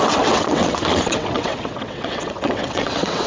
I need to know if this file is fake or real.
fake